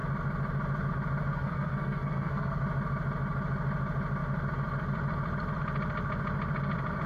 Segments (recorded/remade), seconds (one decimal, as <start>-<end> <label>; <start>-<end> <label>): 0.0-1.3 recorded; 1.3-2.6 remade; 2.6-7.1 recorded